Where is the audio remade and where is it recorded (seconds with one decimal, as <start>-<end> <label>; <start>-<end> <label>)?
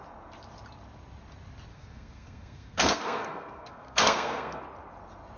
0.0-1.7 recorded; 1.7-4.6 remade; 4.6-5.4 recorded